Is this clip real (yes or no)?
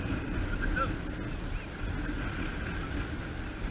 yes